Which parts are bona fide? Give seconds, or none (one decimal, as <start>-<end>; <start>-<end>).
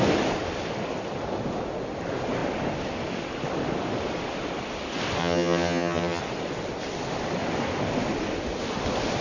0.0-5.2; 6.2-9.2